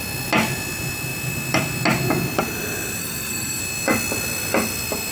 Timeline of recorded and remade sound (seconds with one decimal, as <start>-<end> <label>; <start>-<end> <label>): 0.0-3.0 recorded; 3.0-3.6 remade; 3.6-5.1 recorded